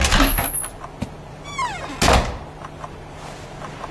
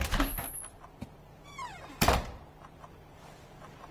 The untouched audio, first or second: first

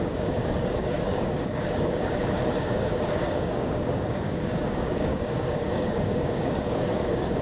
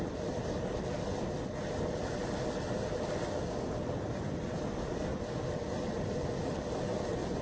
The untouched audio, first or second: second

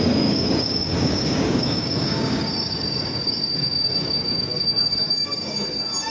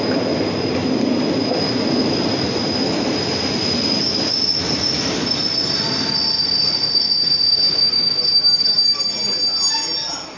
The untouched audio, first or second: second